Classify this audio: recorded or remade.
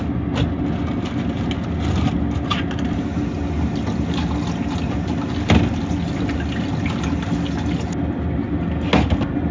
recorded